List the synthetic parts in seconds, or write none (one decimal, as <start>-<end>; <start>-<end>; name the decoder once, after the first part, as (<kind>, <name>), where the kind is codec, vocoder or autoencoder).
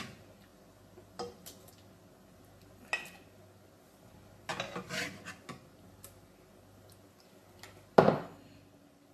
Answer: none